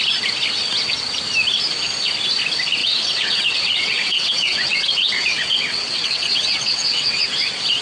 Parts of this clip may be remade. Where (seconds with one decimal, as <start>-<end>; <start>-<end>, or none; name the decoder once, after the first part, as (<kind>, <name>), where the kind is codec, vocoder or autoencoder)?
2.8-7.2 (vocoder, WaveNeXt)